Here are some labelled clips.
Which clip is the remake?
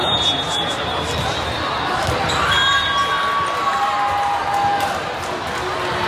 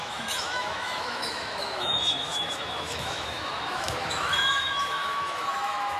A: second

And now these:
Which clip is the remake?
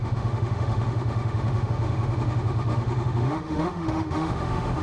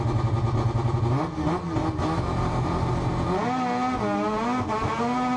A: first